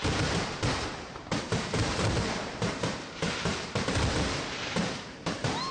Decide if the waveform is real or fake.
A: fake